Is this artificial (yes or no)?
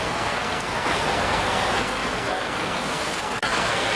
yes